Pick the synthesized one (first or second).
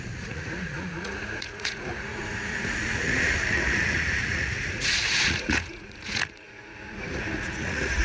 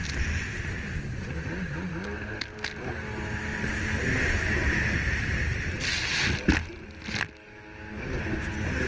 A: first